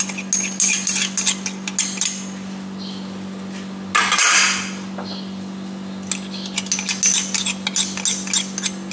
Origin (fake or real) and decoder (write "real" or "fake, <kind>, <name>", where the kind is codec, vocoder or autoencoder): real